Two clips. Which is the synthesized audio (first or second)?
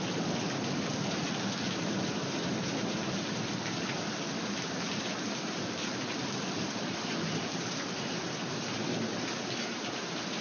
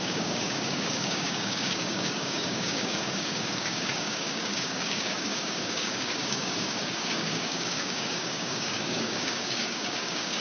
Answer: second